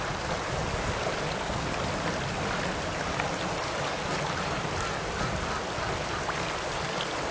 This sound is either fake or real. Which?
real